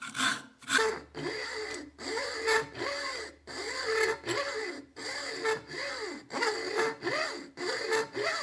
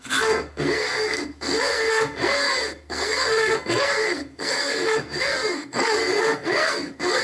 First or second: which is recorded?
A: first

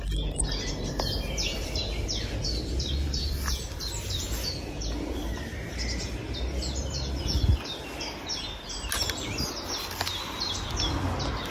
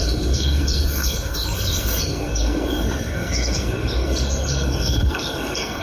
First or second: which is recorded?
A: first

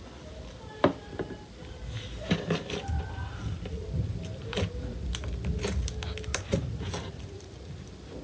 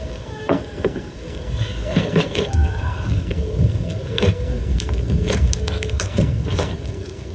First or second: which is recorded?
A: first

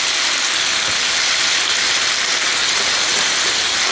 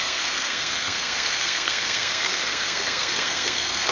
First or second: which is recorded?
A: first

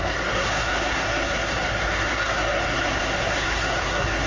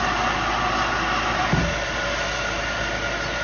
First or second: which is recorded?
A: second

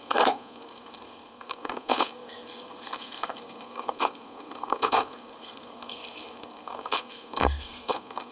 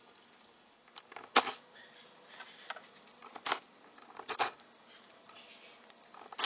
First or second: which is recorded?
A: second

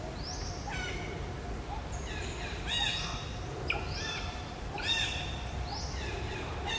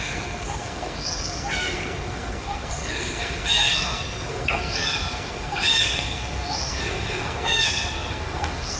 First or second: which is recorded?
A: first